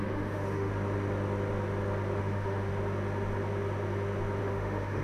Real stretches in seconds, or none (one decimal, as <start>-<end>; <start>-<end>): 0.7-2.2; 2.7-4.4